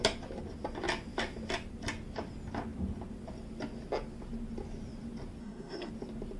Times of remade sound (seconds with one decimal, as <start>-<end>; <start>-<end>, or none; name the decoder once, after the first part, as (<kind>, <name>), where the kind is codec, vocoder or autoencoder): 5.4-5.9 (codec, SNAC)